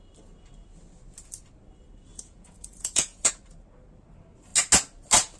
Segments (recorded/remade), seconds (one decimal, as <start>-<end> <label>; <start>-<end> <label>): 0.0-2.1 recorded; 2.1-3.3 remade; 3.3-5.4 recorded